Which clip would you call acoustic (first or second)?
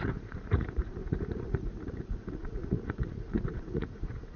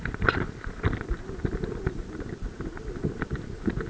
second